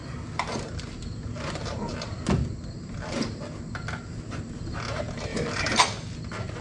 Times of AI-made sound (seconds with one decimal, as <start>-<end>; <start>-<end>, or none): 5.3-5.8